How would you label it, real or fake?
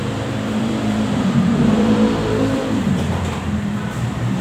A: fake